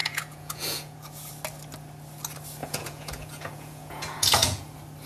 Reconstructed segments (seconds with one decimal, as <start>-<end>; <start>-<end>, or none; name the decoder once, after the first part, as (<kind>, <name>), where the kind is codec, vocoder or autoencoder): 0.0-1.3 (vocoder, Vocos); 2.6-4.6